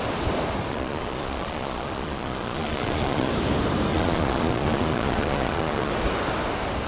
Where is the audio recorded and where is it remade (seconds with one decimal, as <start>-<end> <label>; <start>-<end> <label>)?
0.0-0.7 recorded; 0.7-3.3 remade; 3.3-3.9 recorded; 3.9-5.9 remade; 5.9-6.9 recorded